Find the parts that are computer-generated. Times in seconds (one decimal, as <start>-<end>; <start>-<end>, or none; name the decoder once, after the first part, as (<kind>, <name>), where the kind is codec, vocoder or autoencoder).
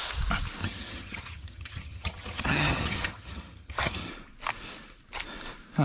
0.6-4.1 (vocoder, HiFi-GAN)